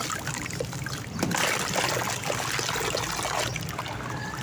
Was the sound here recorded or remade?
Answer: recorded